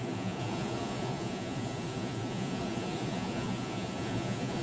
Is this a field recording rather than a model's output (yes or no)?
no